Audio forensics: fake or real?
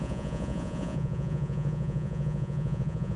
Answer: fake